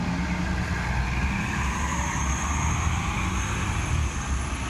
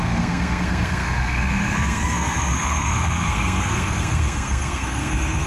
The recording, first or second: first